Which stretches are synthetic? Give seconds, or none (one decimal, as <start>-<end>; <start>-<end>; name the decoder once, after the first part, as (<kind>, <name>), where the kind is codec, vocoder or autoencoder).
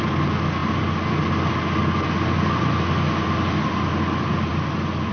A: none